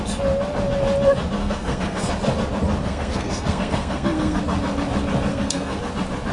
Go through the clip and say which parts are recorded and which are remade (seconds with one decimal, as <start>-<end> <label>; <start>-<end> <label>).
0.0-1.4 recorded; 1.4-2.1 remade; 2.1-2.8 recorded; 2.8-4.4 remade; 4.4-5.3 recorded; 5.3-5.8 remade; 5.8-6.3 recorded